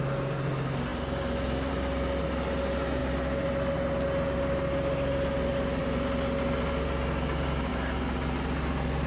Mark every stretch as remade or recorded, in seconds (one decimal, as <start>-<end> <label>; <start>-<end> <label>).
0.0-9.1 recorded